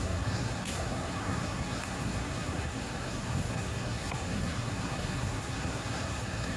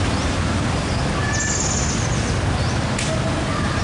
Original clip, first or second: second